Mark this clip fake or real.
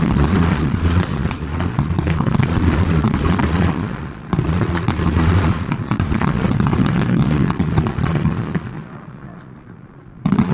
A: fake